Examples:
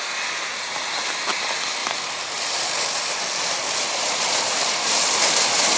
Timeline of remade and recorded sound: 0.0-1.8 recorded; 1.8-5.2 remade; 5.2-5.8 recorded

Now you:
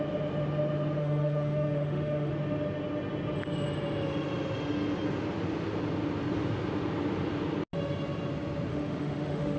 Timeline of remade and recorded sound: 0.0-1.0 recorded; 1.0-2.3 remade; 2.3-8.7 recorded; 8.7-9.6 remade

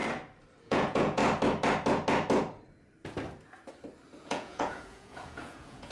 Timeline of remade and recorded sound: 0.0-0.6 recorded; 0.6-1.2 remade; 1.2-4.2 recorded; 4.2-5.9 remade

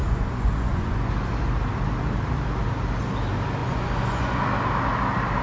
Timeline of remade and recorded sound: 0.0-1.1 remade; 1.1-3.6 recorded; 3.6-4.4 remade; 4.4-5.4 recorded